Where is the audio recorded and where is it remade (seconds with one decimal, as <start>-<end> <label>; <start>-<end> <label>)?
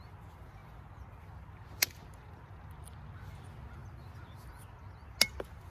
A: 0.0-5.7 recorded